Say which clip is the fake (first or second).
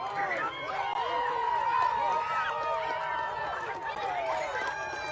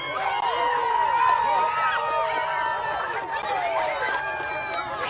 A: first